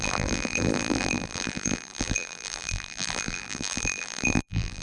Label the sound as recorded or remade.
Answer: remade